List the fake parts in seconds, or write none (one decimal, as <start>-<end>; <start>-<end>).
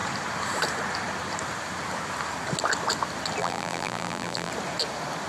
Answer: 3.4-4.5